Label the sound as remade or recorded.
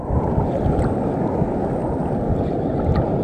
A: recorded